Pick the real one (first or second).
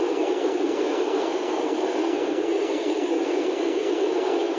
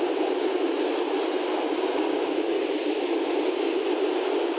second